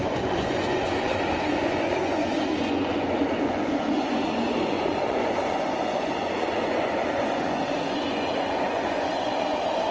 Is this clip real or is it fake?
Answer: fake